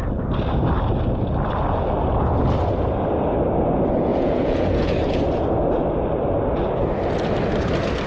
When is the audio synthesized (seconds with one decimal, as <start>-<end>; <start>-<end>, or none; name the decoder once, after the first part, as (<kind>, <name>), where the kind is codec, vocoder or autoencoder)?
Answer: 4.1-4.9 (vocoder, Vocos)